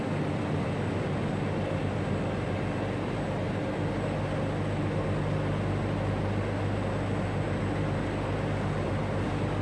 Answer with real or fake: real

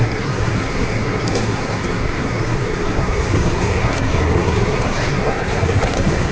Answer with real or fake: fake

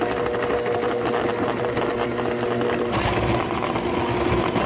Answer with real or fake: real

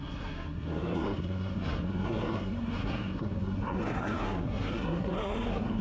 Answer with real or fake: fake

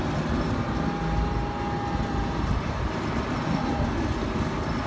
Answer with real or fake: real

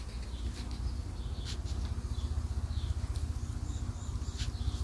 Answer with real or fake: real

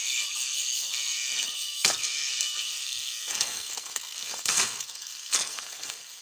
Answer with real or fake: fake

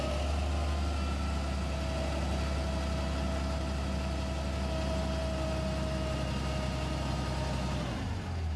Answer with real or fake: real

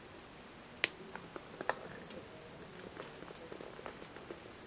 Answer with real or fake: real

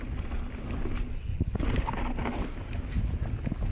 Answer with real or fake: real